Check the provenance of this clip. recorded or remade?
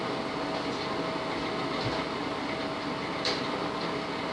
recorded